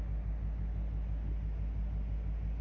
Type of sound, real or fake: real